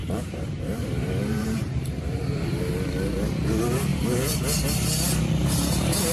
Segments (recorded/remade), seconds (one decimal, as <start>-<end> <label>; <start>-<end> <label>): 0.0-2.6 remade; 2.6-3.9 recorded; 3.9-4.4 remade; 4.4-5.4 recorded; 5.4-6.1 remade